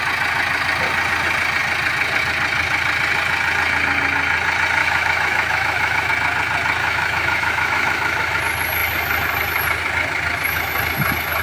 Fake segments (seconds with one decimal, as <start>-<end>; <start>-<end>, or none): 4.8-6.1; 6.8-8.4